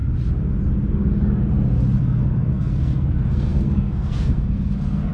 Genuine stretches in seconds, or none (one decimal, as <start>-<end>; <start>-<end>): 0.0-2.0